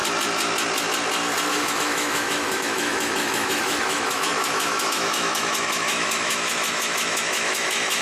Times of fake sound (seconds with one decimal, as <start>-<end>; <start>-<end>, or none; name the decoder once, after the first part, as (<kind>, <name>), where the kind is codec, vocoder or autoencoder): 1.5-8.0 (autoencoder, DAC-VAE)